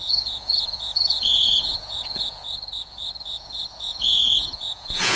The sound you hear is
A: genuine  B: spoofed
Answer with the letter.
B